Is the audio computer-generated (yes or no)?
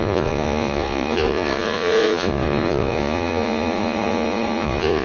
yes